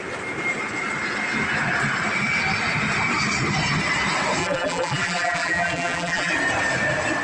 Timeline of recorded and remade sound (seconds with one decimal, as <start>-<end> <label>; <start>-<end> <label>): 0.0-4.4 recorded; 4.4-6.3 remade; 6.3-7.2 recorded